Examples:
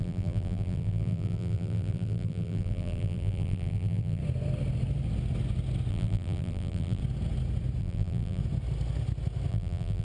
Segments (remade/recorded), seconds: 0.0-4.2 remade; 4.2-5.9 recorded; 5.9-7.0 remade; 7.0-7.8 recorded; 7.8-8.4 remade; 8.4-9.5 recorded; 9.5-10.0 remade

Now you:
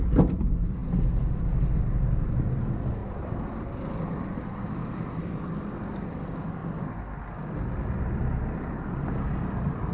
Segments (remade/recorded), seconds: 0.0-0.8 remade; 0.8-1.4 recorded; 1.4-3.0 remade; 3.0-4.1 recorded; 4.1-6.6 remade; 6.6-7.6 recorded; 7.6-9.9 remade

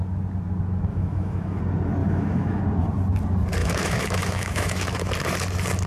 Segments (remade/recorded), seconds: 0.0-0.9 recorded; 0.9-1.6 remade; 1.6-2.0 recorded; 2.0-2.6 remade; 2.6-3.6 recorded; 3.6-5.1 remade; 5.1-5.9 recorded

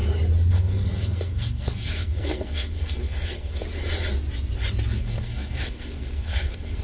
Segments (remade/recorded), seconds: 0.0-0.5 recorded; 0.5-3.6 remade; 3.6-5.0 recorded; 5.0-6.8 remade

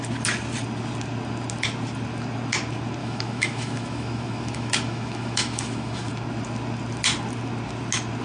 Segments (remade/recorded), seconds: 0.0-3.0 recorded; 3.0-6.1 remade; 6.1-8.2 recorded

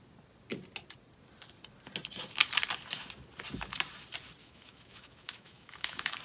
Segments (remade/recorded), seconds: 0.0-4.4 recorded; 4.4-6.2 remade

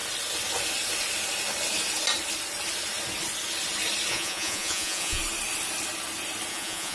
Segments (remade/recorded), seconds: 0.0-4.1 recorded; 4.1-5.2 remade; 5.2-6.5 recorded; 6.5-6.9 remade

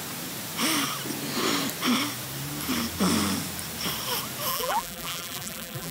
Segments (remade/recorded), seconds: 0.0-4.5 recorded; 4.5-5.9 remade